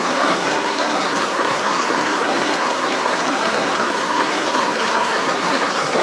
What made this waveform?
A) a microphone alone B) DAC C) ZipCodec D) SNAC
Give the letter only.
D